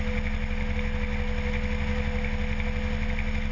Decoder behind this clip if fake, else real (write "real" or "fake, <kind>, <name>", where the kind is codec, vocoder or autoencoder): real